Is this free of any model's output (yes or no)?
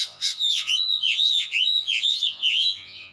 no